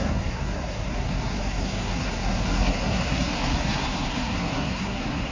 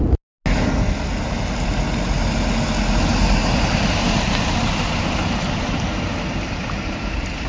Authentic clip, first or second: second